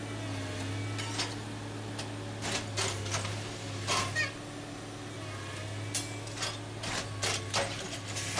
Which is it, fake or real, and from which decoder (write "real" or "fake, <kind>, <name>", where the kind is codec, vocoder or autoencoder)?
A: real